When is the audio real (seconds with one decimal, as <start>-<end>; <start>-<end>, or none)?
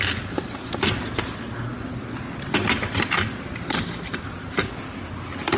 0.0-5.6